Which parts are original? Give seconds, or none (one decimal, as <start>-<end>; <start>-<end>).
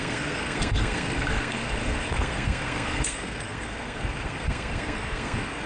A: none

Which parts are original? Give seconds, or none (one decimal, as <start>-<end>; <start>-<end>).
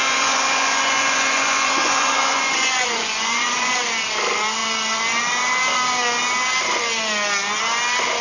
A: 3.7-8.2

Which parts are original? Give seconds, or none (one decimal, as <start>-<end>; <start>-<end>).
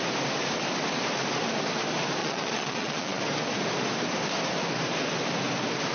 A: 0.0-2.2; 3.2-5.9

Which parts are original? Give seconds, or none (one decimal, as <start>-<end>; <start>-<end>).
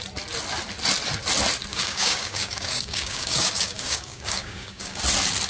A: 0.0-1.7; 5.0-5.5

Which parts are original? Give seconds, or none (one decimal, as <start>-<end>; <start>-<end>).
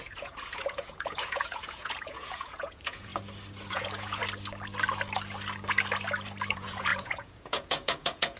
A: 3.1-3.7; 4.2-6.5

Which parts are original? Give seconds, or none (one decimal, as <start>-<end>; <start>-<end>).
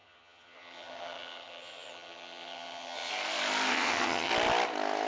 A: 3.1-3.7; 4.3-5.1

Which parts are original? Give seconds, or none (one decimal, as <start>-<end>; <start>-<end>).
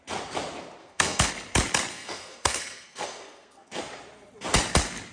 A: 0.0-0.8; 1.3-1.9; 3.8-5.1